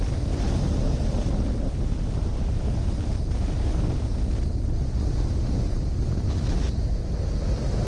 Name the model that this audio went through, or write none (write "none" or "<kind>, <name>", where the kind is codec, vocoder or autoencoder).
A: none